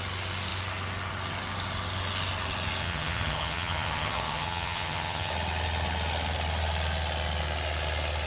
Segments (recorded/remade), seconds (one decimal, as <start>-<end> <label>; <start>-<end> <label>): 0.0-2.8 recorded; 2.8-5.3 remade; 5.3-8.3 recorded